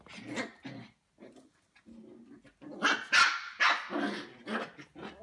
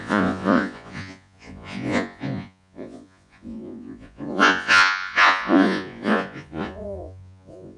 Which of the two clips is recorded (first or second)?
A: first